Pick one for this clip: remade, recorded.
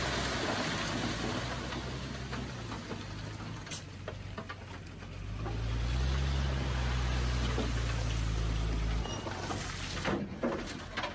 recorded